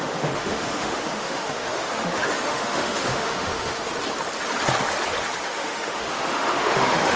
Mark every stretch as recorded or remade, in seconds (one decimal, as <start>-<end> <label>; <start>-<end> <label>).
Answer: 0.0-3.9 remade; 3.9-5.5 recorded; 5.5-7.2 remade